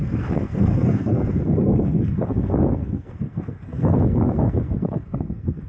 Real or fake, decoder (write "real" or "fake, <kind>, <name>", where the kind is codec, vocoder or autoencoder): fake, codec, SNAC